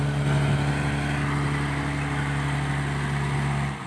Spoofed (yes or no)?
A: no